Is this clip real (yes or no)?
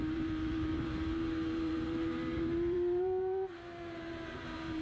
no